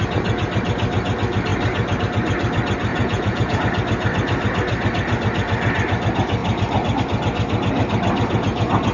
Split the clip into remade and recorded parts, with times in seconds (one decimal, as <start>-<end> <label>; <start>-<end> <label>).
0.0-2.9 recorded; 2.9-3.6 remade; 3.6-8.9 recorded